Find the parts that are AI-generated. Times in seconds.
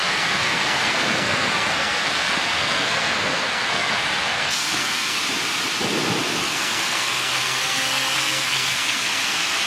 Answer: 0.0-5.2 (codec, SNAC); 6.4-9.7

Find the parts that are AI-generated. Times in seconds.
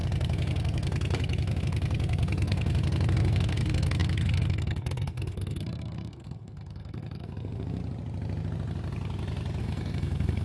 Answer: 0.0-7.8 (codec, SNAC); 9.6-10.4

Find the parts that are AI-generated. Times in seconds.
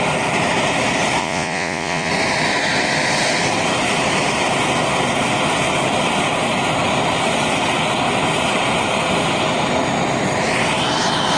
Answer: 1.2-2.1 (vocoder, Vocos)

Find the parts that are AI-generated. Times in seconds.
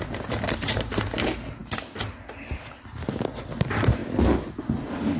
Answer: none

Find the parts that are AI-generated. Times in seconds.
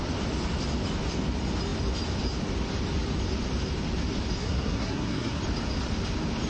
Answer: 4.4-5.4 (codec, SNAC)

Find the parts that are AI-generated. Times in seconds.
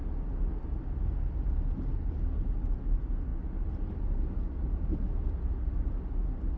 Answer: none